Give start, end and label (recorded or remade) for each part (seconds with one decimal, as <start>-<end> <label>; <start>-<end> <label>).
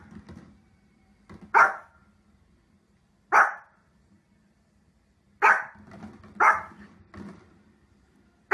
0.0-8.5 recorded